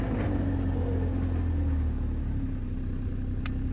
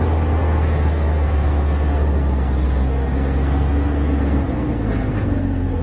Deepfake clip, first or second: second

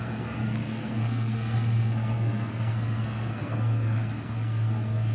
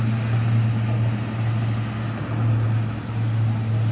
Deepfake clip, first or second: first